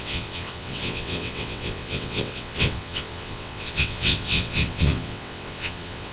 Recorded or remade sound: remade